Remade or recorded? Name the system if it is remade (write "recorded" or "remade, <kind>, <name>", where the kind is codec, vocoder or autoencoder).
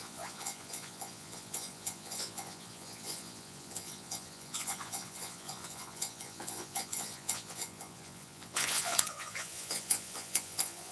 remade, vocoder, Vocos